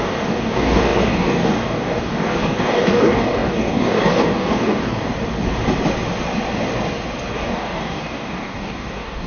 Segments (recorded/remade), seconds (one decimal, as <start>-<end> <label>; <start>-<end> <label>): 0.0-5.1 remade; 5.1-7.3 recorded; 7.3-9.3 remade